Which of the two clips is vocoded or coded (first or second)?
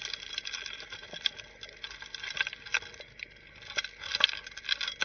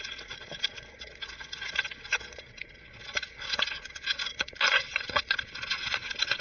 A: second